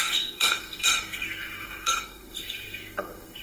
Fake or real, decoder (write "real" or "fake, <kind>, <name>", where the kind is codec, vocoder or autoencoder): fake, codec, SNAC